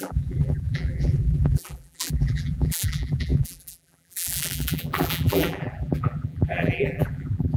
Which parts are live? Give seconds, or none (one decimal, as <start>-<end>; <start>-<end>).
none